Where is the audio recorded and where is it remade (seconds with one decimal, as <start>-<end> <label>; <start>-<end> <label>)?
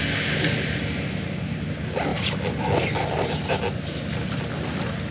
0.0-5.1 recorded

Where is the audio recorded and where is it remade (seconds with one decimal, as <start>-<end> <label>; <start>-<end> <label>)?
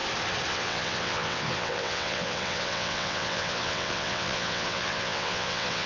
0.0-0.5 recorded; 0.5-5.9 remade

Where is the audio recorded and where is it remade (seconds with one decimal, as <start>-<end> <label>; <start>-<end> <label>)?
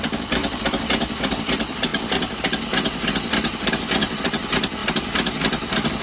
0.0-0.4 remade; 0.4-0.9 recorded; 0.9-1.9 remade; 1.9-3.7 recorded; 3.7-6.0 remade